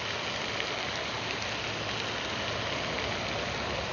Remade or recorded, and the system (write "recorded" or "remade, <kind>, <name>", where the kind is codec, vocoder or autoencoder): recorded